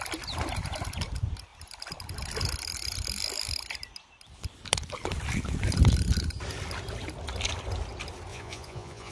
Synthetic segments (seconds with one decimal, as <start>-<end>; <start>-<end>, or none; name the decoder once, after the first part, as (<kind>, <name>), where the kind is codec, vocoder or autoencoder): 8.3-9.1 (vocoder, Vocos)